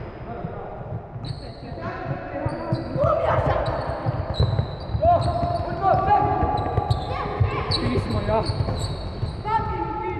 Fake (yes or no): no